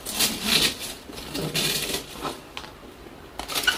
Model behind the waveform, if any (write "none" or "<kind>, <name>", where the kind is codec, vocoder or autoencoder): none